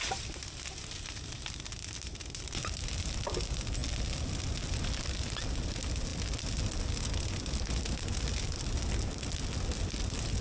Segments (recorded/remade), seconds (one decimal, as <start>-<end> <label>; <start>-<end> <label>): 0.0-10.4 recorded